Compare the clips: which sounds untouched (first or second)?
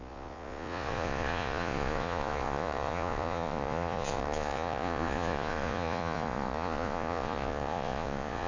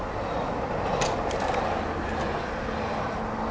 second